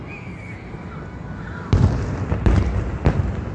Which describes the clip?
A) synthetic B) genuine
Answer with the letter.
B